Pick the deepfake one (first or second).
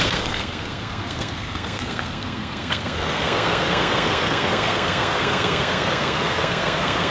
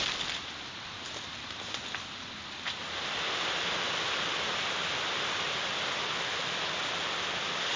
first